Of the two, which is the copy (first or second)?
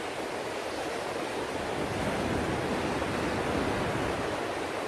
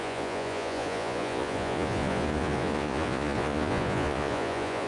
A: second